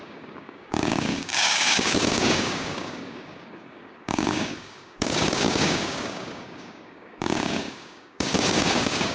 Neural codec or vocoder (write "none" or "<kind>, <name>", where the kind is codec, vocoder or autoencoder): codec, DAC